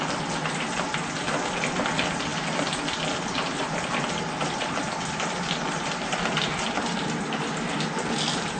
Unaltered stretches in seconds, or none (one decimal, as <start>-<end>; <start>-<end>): 0.0-8.6